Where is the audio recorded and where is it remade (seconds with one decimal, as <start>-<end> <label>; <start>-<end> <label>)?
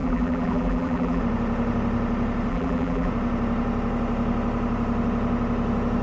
0.0-1.2 remade; 1.2-2.5 recorded; 2.5-3.1 remade; 3.1-6.0 recorded